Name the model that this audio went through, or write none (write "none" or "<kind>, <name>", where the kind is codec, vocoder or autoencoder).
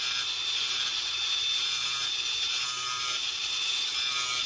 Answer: none